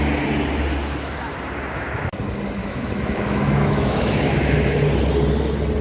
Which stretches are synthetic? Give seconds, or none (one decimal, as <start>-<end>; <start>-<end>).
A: 2.6-4.8